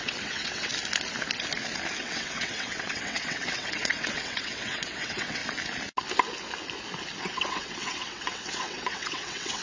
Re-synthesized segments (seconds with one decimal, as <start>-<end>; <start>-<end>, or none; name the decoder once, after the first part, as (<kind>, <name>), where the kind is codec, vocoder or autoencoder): 0.0-0.7 (vocoder, WaveNeXt); 1.9-5.4; 7.2-9.6